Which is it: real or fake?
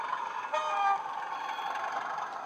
fake